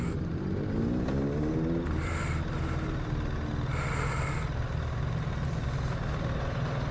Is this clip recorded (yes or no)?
yes